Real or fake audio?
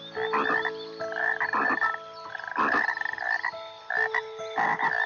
real